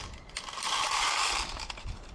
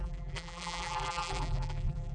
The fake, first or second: second